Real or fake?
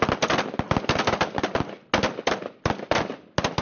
real